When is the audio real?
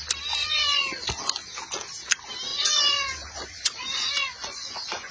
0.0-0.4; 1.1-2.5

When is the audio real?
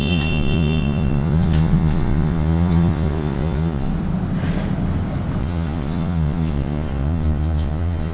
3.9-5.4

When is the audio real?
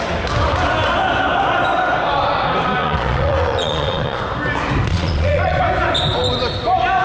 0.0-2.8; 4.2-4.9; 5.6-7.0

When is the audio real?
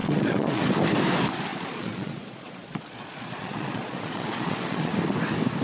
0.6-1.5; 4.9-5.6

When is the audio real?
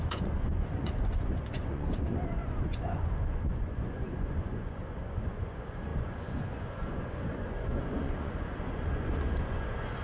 none